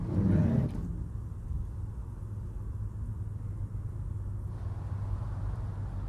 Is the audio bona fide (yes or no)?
yes